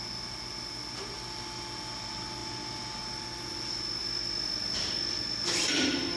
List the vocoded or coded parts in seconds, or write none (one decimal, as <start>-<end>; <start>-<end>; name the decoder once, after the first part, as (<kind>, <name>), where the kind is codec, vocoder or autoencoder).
2.4-3.0 (vocoder, BigVGAN v2); 4.0-6.2